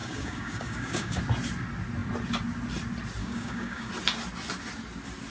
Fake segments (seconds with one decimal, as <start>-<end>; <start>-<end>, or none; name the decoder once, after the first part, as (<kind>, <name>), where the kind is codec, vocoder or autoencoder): 0.0-1.2 (codec, DAC); 3.2-3.9